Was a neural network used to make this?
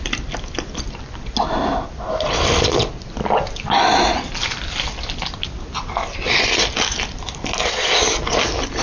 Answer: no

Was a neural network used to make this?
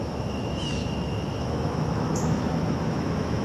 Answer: yes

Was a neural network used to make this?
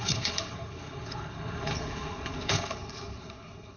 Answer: yes